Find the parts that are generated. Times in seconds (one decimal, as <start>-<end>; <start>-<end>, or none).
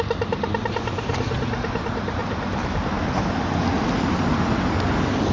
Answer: none